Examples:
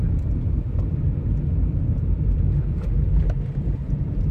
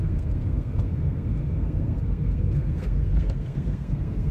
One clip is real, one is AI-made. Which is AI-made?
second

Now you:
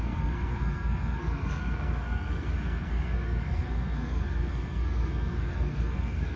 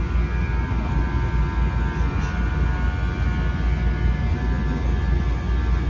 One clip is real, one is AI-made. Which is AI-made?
first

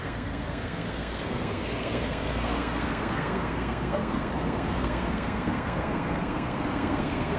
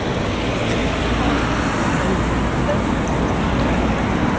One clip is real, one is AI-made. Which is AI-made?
first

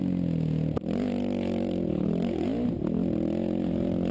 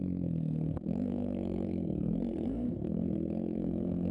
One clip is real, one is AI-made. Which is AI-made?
second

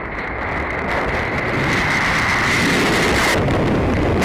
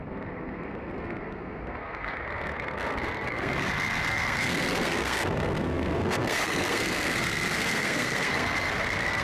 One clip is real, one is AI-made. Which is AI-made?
second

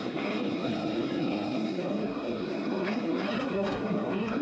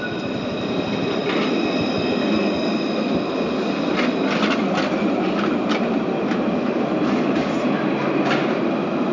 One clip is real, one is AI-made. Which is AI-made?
first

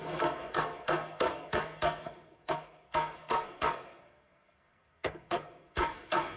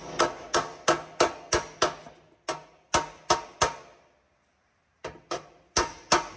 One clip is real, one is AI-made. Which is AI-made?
first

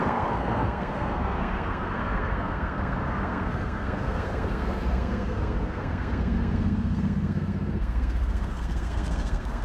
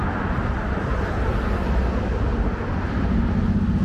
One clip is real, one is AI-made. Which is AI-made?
first